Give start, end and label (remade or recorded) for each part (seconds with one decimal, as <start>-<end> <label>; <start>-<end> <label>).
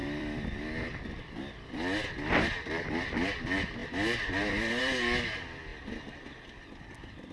0.0-1.4 remade; 1.4-7.3 recorded